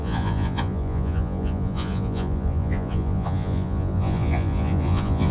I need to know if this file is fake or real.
fake